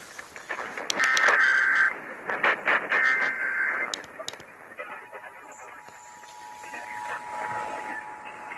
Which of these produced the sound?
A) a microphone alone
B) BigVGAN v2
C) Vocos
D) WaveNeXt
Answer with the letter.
A